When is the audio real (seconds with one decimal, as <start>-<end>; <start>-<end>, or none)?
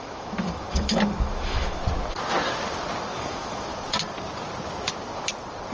1.8-3.1; 3.7-5.7